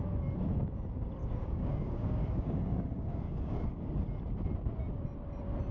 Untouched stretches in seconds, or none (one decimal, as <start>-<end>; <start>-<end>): 0.0-1.2; 3.8-5.7

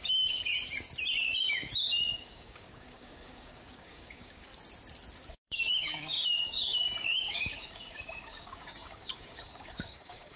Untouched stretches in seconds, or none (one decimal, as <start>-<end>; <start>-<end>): 0.4-1.4; 4.5-5.3

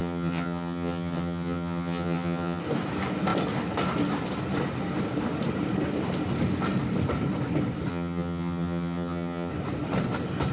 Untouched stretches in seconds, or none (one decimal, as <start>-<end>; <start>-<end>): 2.6-7.9; 9.5-10.5

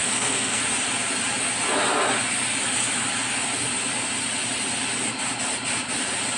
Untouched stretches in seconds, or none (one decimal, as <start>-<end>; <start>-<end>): 0.6-6.4

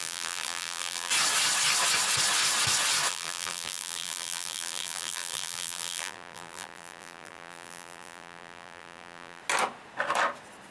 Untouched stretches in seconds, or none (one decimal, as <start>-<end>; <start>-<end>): 1.1-3.1; 9.4-10.7

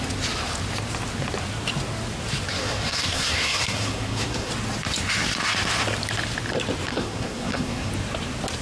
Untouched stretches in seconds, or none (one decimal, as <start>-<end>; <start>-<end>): 0.0-2.5; 4.5-6.9; 7.9-8.6

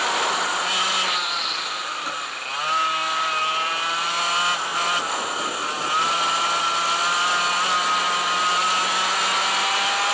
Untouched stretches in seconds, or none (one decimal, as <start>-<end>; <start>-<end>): 0.0-10.1

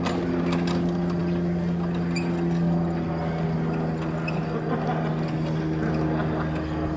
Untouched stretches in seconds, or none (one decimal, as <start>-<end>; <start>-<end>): 0.0-7.0